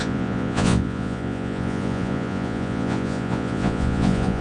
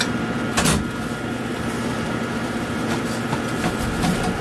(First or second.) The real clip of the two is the second